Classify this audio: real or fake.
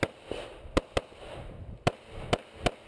real